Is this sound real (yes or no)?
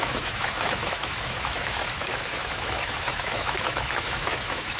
no